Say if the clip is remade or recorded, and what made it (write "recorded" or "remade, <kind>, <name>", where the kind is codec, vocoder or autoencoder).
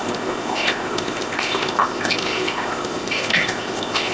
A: remade, codec, ZipCodec